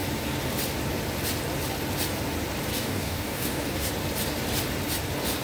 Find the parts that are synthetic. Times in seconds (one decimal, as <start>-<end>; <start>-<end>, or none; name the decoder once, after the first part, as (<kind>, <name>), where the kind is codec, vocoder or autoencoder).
2.7-3.9 (codec, DAC)